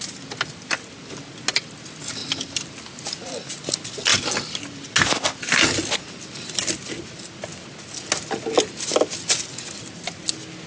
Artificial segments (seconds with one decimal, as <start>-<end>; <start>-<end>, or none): none